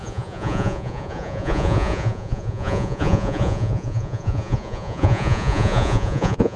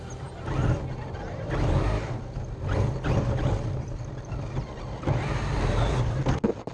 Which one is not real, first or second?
first